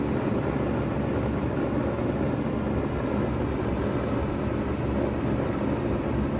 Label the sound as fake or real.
real